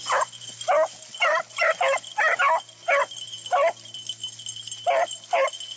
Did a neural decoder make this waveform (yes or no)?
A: no